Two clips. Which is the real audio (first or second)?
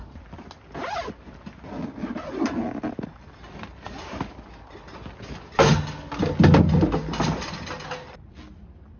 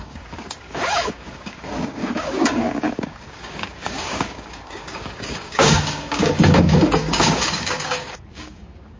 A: first